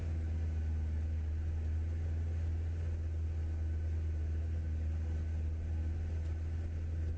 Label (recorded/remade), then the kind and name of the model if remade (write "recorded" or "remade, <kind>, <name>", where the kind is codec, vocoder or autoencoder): recorded